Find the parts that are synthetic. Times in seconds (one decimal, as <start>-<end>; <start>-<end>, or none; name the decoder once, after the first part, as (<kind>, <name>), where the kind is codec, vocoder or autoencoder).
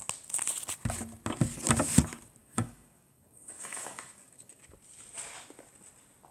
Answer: 2.4-4.6 (codec, DAC)